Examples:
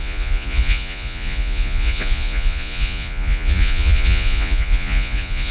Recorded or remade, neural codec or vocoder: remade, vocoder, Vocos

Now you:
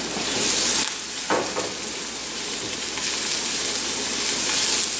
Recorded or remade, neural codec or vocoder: recorded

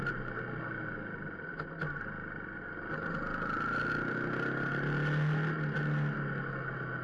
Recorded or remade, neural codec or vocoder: recorded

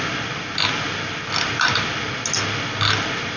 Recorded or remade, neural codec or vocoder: recorded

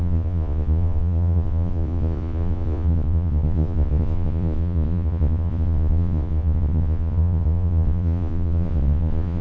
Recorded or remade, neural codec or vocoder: remade, vocoder, Vocos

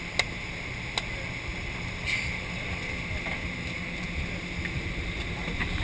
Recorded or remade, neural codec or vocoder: recorded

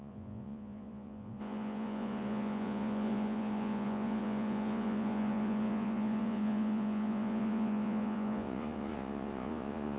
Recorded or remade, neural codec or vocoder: remade, vocoder, Vocos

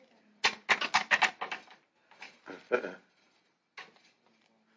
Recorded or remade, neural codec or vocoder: recorded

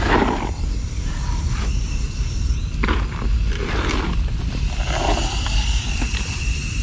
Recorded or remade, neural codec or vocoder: recorded